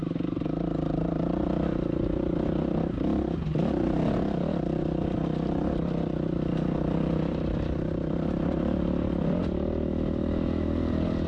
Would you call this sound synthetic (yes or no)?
no